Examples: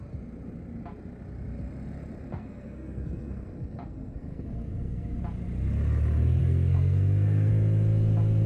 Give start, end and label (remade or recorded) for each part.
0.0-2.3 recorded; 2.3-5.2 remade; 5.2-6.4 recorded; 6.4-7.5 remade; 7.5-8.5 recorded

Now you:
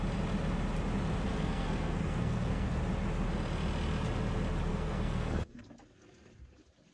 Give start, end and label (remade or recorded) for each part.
0.0-1.3 recorded; 1.3-2.7 remade; 2.7-4.7 recorded; 4.7-5.6 remade; 5.6-6.9 recorded

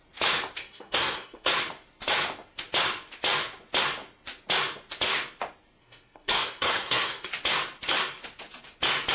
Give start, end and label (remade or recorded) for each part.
0.0-0.6 recorded; 0.6-1.5 remade; 1.5-5.8 recorded; 5.8-7.3 remade; 7.3-9.1 recorded